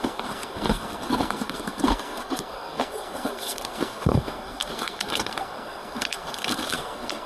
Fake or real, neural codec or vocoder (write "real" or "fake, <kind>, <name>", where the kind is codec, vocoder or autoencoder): fake, codec, SNAC